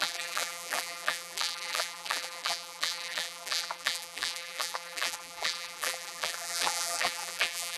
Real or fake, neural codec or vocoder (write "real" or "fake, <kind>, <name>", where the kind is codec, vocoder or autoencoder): fake, vocoder, BigVGAN v2